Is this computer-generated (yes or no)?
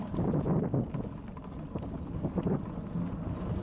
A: no